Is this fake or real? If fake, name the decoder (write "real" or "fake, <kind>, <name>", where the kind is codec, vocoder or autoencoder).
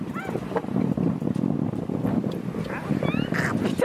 real